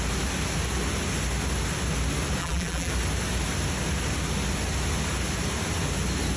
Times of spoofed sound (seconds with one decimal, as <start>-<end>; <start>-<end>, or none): 2.4-2.9